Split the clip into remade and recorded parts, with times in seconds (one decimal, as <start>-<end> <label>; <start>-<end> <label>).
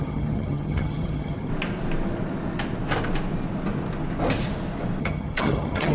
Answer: 0.0-1.5 remade; 1.5-5.0 recorded; 5.0-5.9 remade